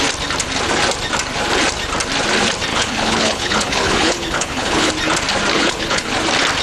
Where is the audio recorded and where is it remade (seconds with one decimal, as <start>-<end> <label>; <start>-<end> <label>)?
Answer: 0.0-2.7 recorded; 2.7-4.9 remade; 4.9-5.5 recorded; 5.5-6.1 remade; 6.1-6.6 recorded